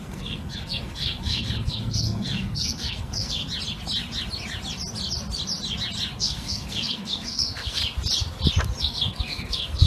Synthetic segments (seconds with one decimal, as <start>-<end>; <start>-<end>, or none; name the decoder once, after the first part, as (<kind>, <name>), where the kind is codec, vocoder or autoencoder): 0.0-3.4 (codec, SNAC); 6.2-7.8; 8.8-9.9